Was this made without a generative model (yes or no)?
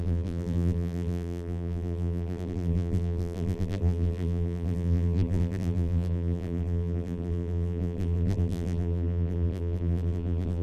no